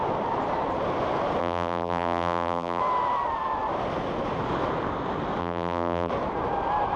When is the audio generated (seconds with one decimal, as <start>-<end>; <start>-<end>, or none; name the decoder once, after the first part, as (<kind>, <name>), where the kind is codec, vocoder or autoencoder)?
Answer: 1.4-2.8 (vocoder, BigVGAN v2); 5.4-6.1